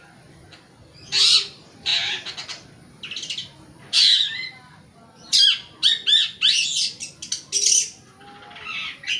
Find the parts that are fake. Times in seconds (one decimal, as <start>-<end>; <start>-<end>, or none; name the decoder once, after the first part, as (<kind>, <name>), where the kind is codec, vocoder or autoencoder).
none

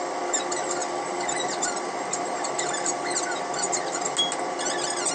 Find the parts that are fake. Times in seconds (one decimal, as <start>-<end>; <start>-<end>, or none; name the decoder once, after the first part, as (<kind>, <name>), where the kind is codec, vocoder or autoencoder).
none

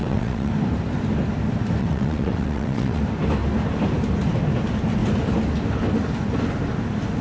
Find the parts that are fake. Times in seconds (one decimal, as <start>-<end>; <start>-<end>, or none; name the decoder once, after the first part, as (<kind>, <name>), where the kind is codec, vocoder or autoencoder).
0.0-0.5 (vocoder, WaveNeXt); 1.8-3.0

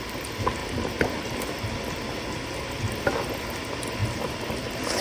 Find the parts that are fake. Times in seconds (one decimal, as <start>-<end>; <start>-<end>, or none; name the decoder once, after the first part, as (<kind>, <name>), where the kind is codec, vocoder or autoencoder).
none

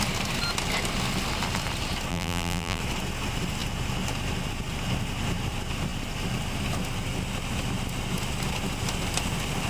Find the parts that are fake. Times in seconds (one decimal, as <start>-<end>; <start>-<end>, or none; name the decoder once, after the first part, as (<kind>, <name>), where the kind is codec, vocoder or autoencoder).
2.1-2.8 (vocoder, BigVGAN v2)

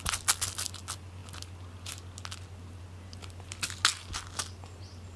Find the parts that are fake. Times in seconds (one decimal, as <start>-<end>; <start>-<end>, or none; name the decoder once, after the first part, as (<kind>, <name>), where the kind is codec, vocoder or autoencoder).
none